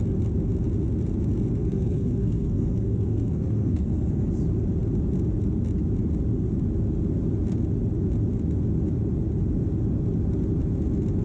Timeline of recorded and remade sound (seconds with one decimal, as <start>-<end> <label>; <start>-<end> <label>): 0.0-1.6 recorded; 1.6-4.1 remade; 4.1-11.2 recorded